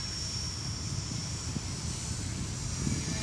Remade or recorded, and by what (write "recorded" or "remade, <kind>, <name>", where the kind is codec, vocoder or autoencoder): recorded